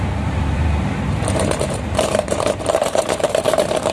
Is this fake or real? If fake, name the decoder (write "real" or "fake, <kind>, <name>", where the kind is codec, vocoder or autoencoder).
fake, vocoder, BigVGAN v2